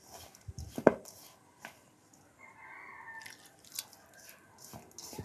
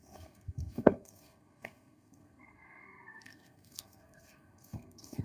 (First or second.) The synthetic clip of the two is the second